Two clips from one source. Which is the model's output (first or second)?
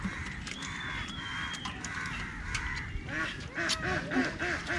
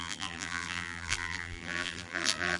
second